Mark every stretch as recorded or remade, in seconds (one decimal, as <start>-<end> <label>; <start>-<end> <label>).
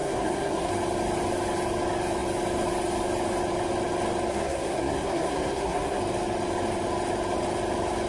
0.0-0.7 remade; 0.7-4.3 recorded; 4.3-6.0 remade; 6.0-8.1 recorded